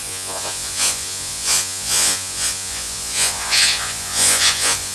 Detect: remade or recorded remade